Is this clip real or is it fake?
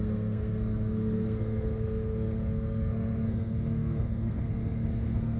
fake